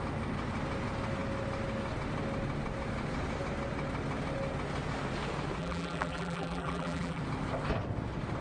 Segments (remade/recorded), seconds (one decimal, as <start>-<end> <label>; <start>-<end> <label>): 0.0-5.6 recorded; 5.6-7.2 remade; 7.2-8.4 recorded